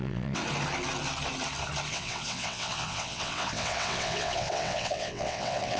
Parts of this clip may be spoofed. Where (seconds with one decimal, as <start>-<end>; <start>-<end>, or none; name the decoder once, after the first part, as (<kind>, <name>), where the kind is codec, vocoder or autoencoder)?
0.0-0.4 (vocoder, WaveNeXt); 1.9-5.8